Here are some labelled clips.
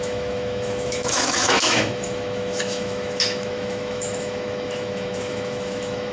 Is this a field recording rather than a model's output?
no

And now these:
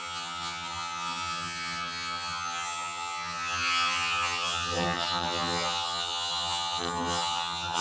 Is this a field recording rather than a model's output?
no